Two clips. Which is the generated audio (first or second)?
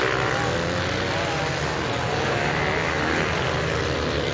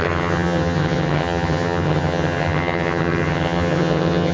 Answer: second